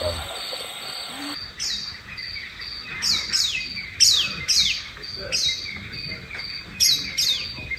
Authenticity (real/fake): real